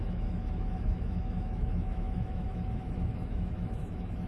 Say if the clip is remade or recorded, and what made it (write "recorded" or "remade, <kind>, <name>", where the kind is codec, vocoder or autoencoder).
remade, autoencoder, DAC-VAE